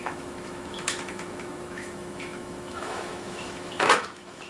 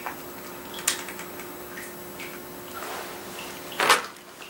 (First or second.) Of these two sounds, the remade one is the first